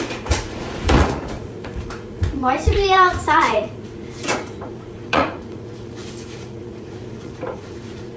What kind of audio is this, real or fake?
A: fake